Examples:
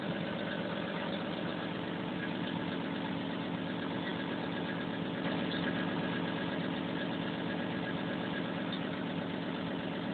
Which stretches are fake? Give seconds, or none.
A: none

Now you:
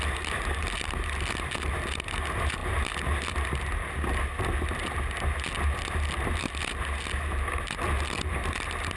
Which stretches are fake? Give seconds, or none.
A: none